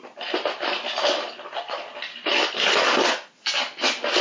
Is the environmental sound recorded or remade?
recorded